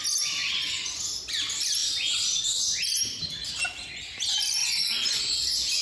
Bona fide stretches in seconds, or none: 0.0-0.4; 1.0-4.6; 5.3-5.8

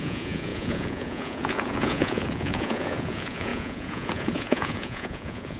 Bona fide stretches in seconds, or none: none

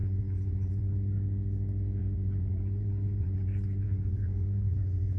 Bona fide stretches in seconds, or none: 0.9-2.0

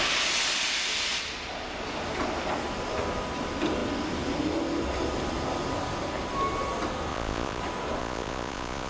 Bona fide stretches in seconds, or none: 0.0-7.1; 7.6-8.0

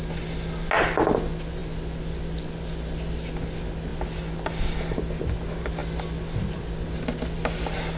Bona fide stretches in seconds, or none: 0.0-8.0